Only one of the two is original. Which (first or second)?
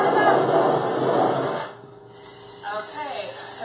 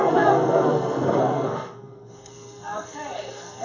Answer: first